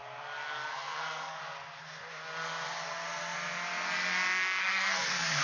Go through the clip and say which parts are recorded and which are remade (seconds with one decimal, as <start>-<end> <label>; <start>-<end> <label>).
0.0-0.7 recorded; 0.7-1.4 remade; 1.4-4.6 recorded; 4.6-5.4 remade